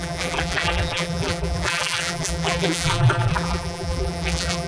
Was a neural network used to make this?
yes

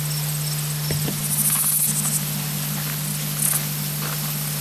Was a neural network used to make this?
no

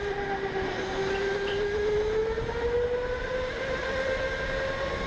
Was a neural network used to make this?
no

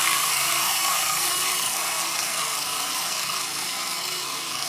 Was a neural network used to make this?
yes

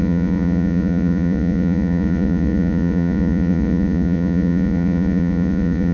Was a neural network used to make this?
yes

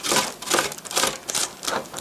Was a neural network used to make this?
yes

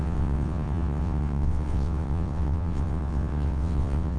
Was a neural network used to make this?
yes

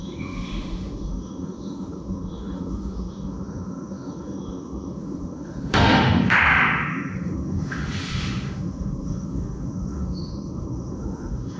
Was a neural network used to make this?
yes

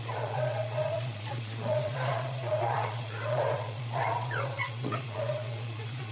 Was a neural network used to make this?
yes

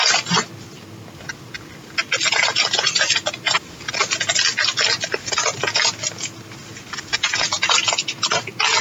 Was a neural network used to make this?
no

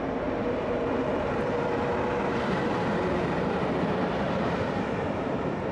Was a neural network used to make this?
yes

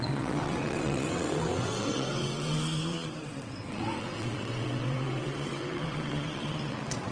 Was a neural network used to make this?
yes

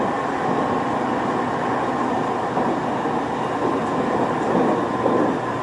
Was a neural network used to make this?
no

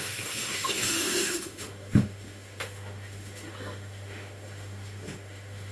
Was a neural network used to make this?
yes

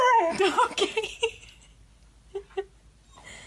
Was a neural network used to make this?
no